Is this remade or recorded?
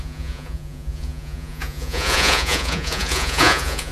remade